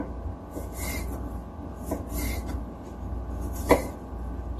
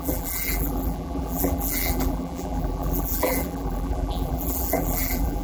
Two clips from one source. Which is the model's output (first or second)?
second